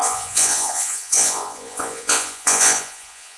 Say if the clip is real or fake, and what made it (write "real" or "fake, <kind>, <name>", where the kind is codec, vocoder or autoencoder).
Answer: fake, vocoder, Vocos